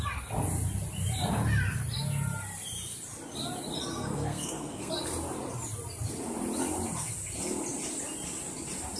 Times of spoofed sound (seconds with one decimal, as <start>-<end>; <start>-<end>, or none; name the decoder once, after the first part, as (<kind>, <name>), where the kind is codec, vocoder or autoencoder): 3.9-4.9 (codec, SNAC)